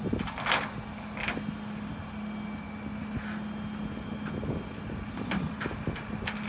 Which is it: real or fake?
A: real